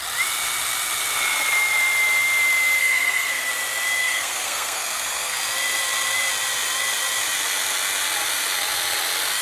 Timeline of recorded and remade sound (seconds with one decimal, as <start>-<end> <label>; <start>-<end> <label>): 0.0-2.8 recorded; 2.8-3.5 remade; 3.5-4.0 recorded; 4.0-5.4 remade; 5.4-9.4 recorded